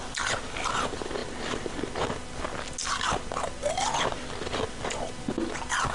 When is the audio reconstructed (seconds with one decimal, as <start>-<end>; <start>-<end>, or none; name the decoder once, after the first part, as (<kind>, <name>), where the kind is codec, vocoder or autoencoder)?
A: none